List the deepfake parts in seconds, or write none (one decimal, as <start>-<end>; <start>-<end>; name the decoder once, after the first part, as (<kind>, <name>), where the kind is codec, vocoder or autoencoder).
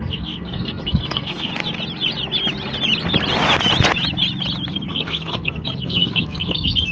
0.0-1.5 (codec, SNAC); 4.7-6.9